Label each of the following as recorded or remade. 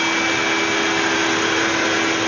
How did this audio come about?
recorded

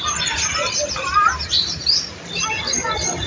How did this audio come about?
recorded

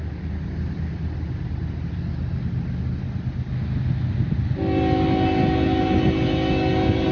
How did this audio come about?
recorded